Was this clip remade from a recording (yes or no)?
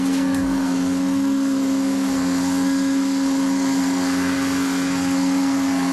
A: yes